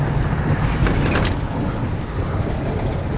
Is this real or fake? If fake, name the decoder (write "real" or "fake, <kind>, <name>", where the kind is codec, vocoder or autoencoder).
real